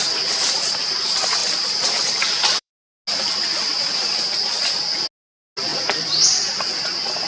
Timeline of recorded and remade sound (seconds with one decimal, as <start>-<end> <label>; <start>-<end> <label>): 0.0-1.4 recorded; 1.4-2.7 remade; 2.7-7.3 recorded

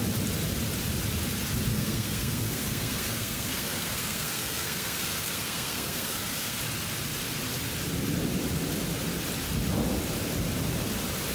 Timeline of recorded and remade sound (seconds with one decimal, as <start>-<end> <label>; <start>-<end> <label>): 0.0-1.7 recorded; 1.7-6.6 remade; 6.6-11.3 recorded

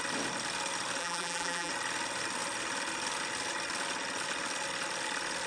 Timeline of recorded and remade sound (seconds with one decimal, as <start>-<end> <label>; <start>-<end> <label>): 0.0-1.0 recorded; 1.0-1.7 remade; 1.7-5.5 recorded

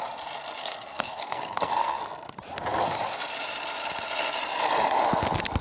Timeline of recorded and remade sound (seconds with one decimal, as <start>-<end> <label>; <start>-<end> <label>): 0.0-0.6 recorded; 0.6-2.0 remade; 2.0-5.6 recorded

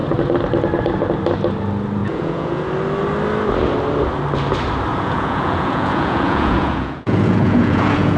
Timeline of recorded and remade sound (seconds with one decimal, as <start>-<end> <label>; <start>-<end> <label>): 0.0-2.0 recorded; 2.0-2.7 remade; 2.7-4.9 recorded; 4.9-8.2 remade

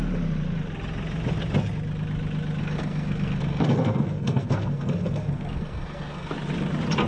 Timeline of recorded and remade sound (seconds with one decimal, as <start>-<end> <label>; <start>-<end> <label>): 0.0-2.6 recorded; 2.6-6.3 remade; 6.3-7.1 recorded